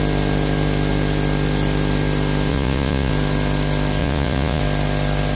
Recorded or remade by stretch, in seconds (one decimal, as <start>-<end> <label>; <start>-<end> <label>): 0.0-2.5 recorded; 2.5-3.1 remade; 3.1-4.0 recorded; 4.0-4.6 remade; 4.6-5.3 recorded